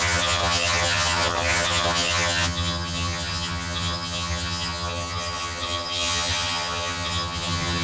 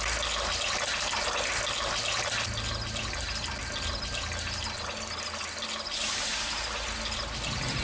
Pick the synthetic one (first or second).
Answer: first